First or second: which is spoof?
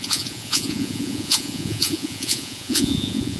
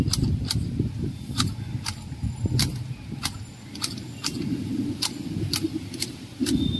first